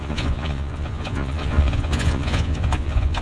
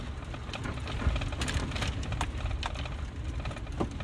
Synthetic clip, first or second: first